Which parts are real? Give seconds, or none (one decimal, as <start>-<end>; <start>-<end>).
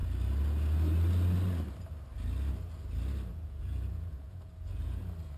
0.0-3.3; 5.0-5.4